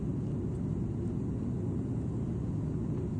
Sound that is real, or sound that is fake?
real